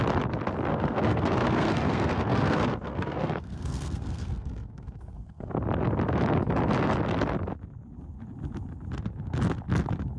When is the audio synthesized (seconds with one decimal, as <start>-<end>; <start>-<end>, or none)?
0.7-5.5